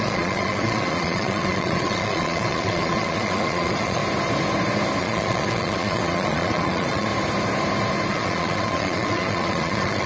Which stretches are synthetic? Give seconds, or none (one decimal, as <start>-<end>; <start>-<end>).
0.0-4.0; 5.0-7.1; 8.1-10.1

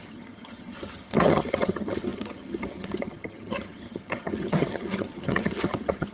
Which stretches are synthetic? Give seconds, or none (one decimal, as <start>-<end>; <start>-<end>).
0.0-6.1

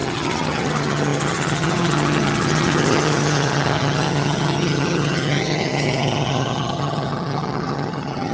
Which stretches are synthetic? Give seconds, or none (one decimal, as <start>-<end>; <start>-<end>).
0.0-8.3

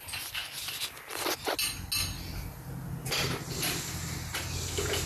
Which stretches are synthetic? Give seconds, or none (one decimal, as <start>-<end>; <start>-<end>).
none

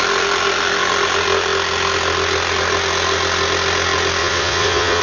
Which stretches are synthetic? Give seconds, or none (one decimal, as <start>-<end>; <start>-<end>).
4.2-5.0

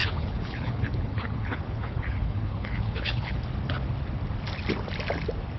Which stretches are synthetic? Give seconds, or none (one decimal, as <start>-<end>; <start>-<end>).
0.0-3.4